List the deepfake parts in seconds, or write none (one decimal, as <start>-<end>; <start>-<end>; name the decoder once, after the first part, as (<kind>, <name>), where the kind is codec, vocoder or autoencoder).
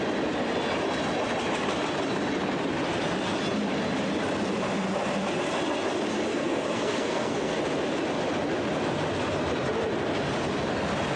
6.3-7.6 (codec, SNAC)